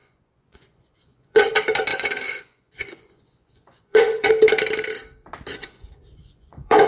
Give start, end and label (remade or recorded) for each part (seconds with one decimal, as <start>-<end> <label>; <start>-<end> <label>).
0.0-1.5 remade; 1.5-1.9 recorded; 1.9-4.3 remade; 4.3-5.5 recorded; 5.5-6.9 remade

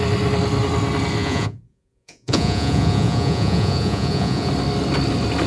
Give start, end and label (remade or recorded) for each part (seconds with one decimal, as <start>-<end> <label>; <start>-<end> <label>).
0.0-1.2 recorded; 1.2-4.5 remade; 4.5-5.5 recorded

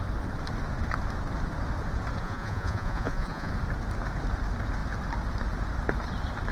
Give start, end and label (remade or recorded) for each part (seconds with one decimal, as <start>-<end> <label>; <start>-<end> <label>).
0.0-2.2 recorded; 2.2-3.5 remade; 3.5-6.5 recorded

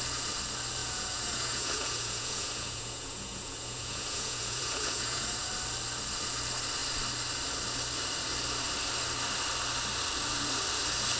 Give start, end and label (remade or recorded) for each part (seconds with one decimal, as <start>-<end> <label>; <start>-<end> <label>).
0.0-0.8 recorded; 0.8-5.5 remade; 5.5-11.2 recorded

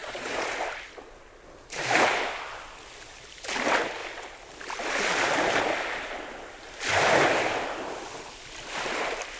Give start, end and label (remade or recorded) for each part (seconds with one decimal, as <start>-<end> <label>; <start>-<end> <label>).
0.0-0.5 remade; 0.5-9.4 recorded

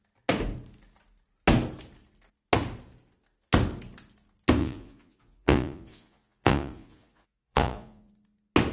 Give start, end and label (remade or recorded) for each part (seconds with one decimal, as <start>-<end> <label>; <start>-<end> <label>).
0.0-4.6 recorded; 4.6-8.1 remade; 8.1-8.7 recorded